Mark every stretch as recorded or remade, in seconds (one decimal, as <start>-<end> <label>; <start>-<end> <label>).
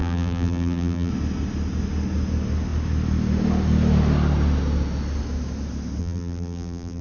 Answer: 0.0-1.1 remade; 1.1-6.0 recorded; 6.0-7.0 remade